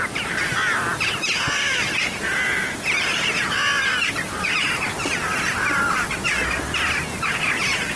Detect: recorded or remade recorded